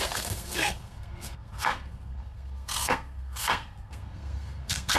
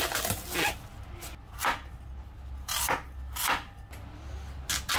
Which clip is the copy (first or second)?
first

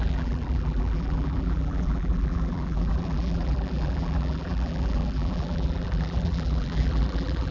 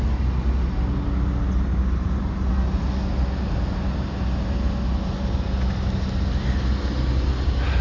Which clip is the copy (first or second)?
first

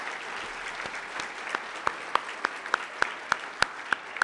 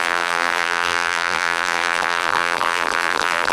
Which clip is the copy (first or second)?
second